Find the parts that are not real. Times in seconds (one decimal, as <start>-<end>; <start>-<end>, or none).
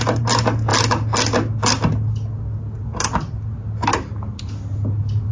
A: none